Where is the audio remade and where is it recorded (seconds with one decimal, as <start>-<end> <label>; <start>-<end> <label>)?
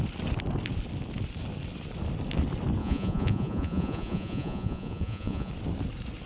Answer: 0.0-2.8 recorded; 2.8-5.5 remade; 5.5-6.3 recorded